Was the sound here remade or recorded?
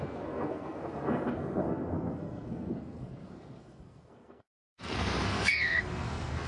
remade